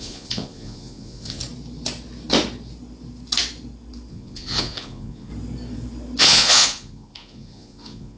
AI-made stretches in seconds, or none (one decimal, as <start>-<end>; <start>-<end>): 0.0-1.4; 4.1-5.3; 6.2-8.2